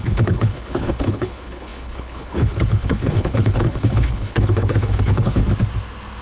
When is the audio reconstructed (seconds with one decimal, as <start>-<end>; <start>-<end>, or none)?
0.0-5.4